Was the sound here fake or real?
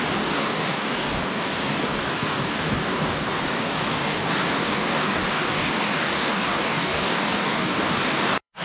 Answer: fake